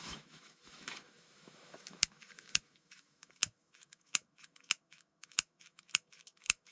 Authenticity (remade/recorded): remade